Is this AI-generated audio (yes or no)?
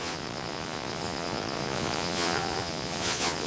yes